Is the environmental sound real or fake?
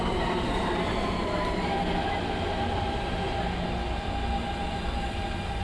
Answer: real